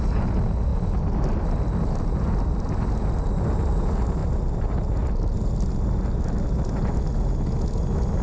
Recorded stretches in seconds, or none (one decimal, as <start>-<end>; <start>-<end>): 0.0-8.2